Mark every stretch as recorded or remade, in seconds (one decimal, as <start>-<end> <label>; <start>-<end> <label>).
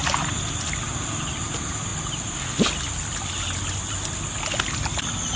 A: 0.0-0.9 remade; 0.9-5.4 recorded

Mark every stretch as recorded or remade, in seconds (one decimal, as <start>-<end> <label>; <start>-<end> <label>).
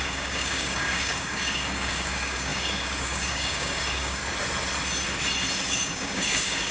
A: 0.0-4.2 remade; 4.2-5.5 recorded; 5.5-6.7 remade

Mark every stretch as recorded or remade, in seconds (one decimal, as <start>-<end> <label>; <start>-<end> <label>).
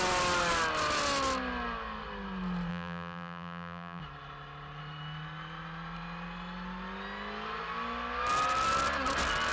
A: 0.0-2.7 recorded; 2.7-4.0 remade; 4.0-9.5 recorded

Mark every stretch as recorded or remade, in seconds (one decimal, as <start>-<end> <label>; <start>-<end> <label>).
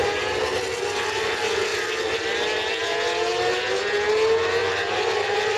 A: 0.0-1.7 recorded; 1.7-2.8 remade; 2.8-4.6 recorded; 4.6-5.6 remade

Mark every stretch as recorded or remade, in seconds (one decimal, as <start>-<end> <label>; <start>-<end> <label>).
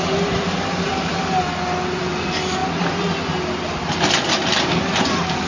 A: 0.0-0.9 remade; 0.9-2.0 recorded; 2.0-2.6 remade; 2.6-4.8 recorded; 4.8-5.5 remade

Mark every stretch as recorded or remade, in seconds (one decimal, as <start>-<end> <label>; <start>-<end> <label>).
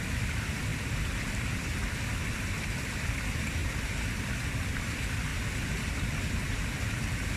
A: 0.0-0.7 recorded; 0.7-2.0 remade; 2.0-3.6 recorded; 3.6-4.8 remade; 4.8-7.4 recorded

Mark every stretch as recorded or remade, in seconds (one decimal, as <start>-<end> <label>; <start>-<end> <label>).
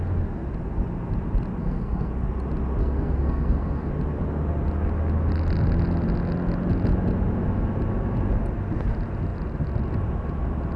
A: 0.0-1.6 recorded; 1.6-2.1 remade; 2.1-2.8 recorded; 2.8-3.9 remade; 3.9-10.8 recorded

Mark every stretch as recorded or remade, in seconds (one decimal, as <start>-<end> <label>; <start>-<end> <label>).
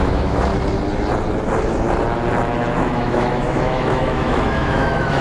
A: 0.0-0.5 remade; 0.5-2.9 recorded; 2.9-5.2 remade